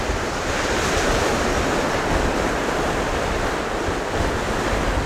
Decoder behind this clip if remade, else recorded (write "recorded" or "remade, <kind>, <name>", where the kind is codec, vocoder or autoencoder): recorded